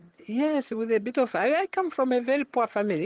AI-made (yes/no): yes